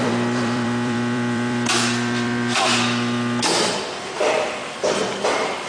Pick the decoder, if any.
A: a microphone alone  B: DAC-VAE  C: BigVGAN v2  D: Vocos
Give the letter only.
C